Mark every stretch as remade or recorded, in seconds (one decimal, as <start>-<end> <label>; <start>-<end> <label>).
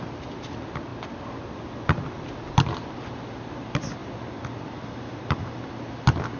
0.0-4.0 recorded; 4.0-5.7 remade; 5.7-6.4 recorded